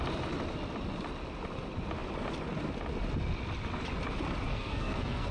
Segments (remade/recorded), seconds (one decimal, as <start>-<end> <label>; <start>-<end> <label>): 0.0-4.5 recorded; 4.5-5.3 remade